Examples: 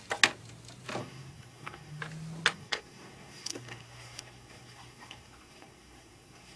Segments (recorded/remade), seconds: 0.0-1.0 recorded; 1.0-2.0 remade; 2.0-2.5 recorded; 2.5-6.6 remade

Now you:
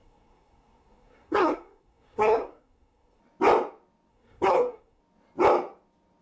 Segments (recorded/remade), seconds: 0.0-3.2 remade; 3.2-4.1 recorded; 4.1-5.0 remade; 5.0-6.2 recorded

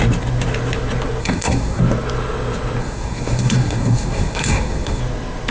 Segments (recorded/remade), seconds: 0.0-1.2 recorded; 1.2-1.8 remade; 1.8-2.8 recorded; 2.8-5.0 remade; 5.0-5.5 recorded

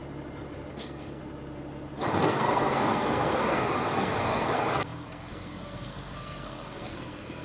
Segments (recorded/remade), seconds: 0.0-0.7 recorded; 0.7-1.2 remade; 1.2-2.1 recorded; 2.1-7.4 remade

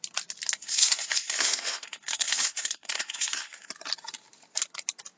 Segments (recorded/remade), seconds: 0.0-0.6 recorded; 0.6-3.7 remade; 3.7-5.2 recorded

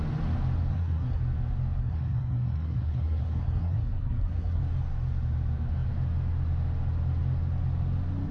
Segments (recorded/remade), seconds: 0.0-0.7 recorded; 0.7-1.2 remade; 1.2-1.8 recorded; 1.8-4.6 remade; 4.6-8.3 recorded

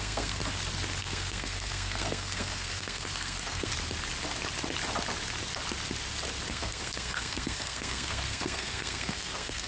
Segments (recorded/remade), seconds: 0.0-0.4 remade; 0.4-1.0 recorded; 1.0-3.7 remade; 3.7-6.5 recorded; 6.5-9.7 remade